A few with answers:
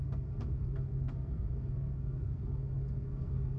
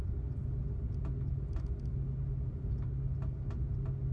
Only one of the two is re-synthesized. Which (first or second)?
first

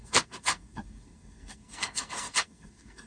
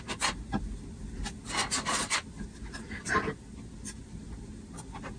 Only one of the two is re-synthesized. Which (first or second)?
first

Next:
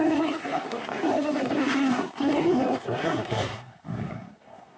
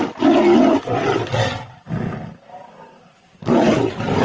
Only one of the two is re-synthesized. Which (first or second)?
first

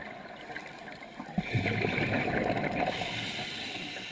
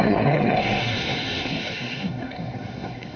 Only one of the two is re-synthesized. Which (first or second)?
second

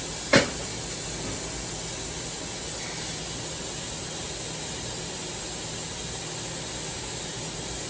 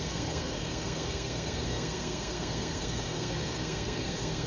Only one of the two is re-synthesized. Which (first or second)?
second